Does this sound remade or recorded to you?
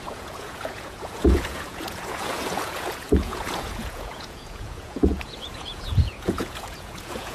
remade